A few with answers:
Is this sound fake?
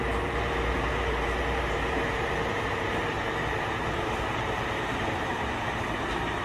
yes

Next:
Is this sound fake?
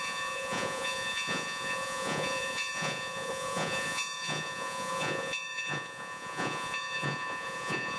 yes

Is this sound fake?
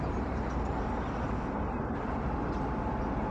no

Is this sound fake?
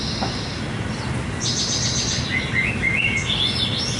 no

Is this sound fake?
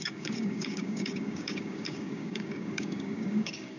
yes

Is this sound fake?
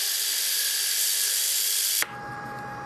no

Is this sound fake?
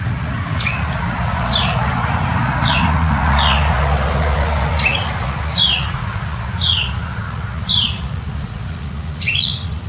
yes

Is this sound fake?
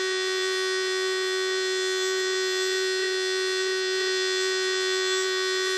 yes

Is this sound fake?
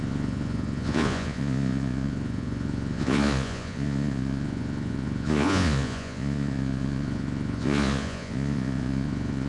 yes